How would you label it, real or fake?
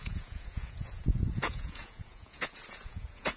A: fake